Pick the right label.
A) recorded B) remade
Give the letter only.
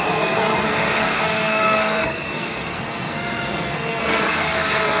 B